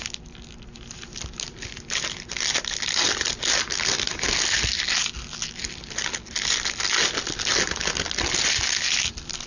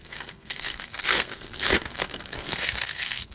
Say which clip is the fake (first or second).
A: second